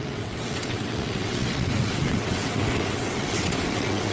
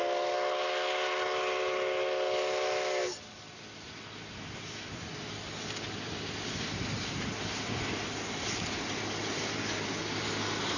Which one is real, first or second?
second